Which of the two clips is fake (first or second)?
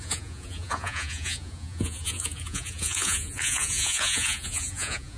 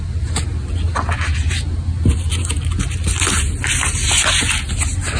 first